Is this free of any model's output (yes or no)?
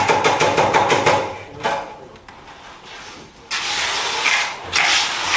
yes